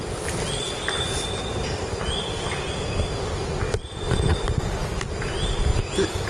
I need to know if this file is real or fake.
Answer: real